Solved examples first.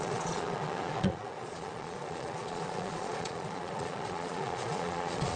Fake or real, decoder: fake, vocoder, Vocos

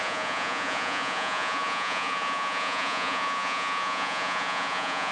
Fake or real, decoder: fake, vocoder, Vocos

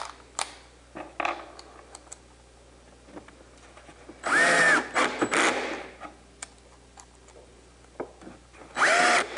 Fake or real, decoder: real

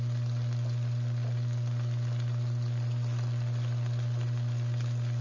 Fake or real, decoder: real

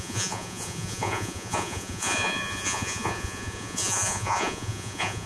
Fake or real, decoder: fake, vocoder, Vocos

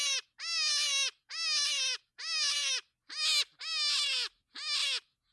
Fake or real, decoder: real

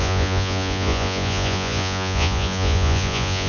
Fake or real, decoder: fake, vocoder, Vocos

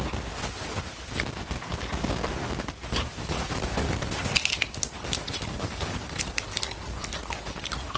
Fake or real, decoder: real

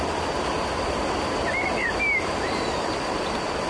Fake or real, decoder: real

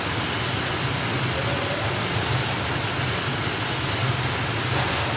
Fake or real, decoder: real